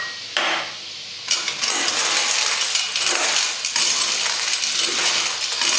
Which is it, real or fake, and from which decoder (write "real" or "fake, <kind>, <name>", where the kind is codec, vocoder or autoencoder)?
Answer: real